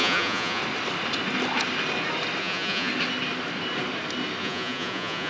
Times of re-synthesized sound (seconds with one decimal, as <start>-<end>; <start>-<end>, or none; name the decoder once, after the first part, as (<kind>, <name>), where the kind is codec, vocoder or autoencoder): 0.0-0.6 (vocoder, Vocos); 2.4-2.9; 4.4-5.3

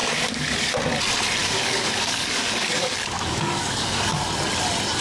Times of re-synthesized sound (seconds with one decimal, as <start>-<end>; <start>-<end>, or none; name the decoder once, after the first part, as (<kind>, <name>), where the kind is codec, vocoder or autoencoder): 0.0-0.7 (codec, DAC); 1.4-4.2

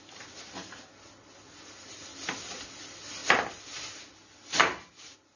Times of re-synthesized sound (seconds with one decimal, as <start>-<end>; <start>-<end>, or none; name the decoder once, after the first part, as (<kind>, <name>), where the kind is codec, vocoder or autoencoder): none

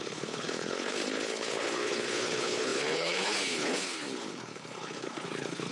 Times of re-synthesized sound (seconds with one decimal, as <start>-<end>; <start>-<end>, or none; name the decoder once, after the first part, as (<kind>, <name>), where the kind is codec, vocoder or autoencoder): 0.0-5.7 (codec, HILCodec)